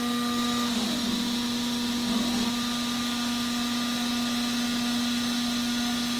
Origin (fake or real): real